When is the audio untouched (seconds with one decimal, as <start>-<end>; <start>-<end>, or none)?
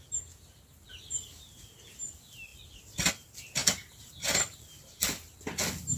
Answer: 0.0-0.9; 1.7-3.6; 5.3-6.0